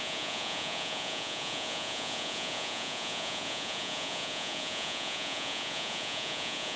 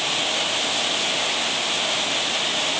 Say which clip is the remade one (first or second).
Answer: first